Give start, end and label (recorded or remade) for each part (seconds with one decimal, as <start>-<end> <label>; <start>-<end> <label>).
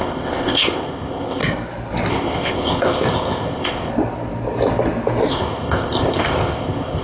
0.0-1.4 remade; 1.4-2.1 recorded; 2.1-3.9 remade; 3.9-5.3 recorded; 5.3-7.0 remade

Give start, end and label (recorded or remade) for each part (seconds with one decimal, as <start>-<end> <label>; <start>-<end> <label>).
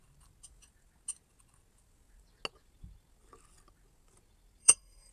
0.0-4.6 recorded; 4.6-5.1 remade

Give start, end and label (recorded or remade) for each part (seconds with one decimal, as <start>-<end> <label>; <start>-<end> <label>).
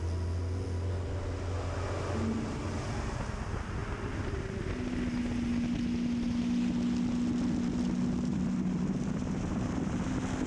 0.0-8.3 recorded; 8.3-10.0 remade; 10.0-10.5 recorded